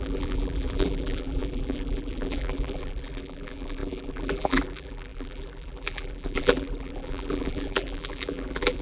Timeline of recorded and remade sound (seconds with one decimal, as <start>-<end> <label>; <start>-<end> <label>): 0.0-8.8 remade